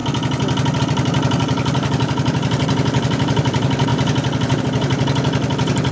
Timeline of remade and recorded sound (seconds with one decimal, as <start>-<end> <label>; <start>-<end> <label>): 0.0-0.8 recorded; 0.8-3.9 remade; 3.9-4.6 recorded; 4.6-5.9 remade